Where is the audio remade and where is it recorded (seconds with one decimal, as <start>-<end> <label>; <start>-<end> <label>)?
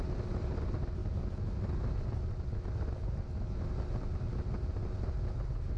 0.0-5.8 recorded